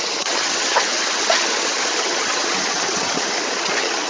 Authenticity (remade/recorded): remade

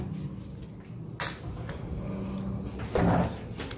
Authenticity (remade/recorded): recorded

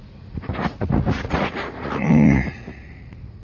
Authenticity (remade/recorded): remade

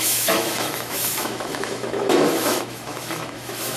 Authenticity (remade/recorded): remade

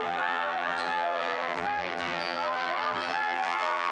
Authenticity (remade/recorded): remade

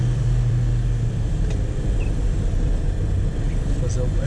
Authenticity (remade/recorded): remade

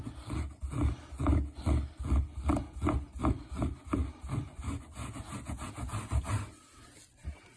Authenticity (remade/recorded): recorded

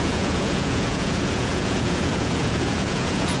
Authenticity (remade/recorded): remade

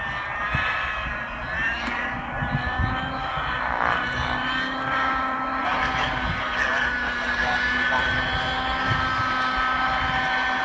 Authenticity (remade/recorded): recorded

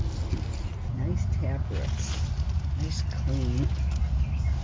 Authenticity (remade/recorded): recorded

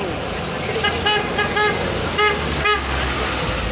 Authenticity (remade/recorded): recorded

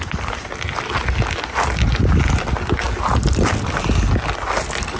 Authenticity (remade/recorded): recorded